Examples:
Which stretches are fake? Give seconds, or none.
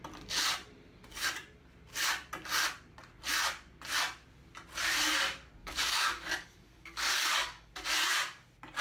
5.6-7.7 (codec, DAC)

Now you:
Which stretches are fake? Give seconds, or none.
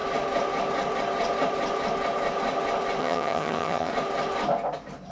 3.0-3.9 (vocoder, HiFi-GAN)